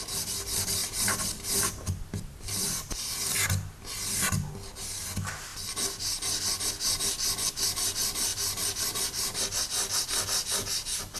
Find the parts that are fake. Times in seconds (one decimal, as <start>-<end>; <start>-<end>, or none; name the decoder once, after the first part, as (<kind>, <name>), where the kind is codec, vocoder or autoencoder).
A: 0.8-3.0 (vocoder, BigVGAN v2); 8.3-9.4